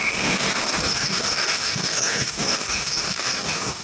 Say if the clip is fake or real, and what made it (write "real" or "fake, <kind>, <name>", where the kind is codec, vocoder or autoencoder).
fake, codec, DAC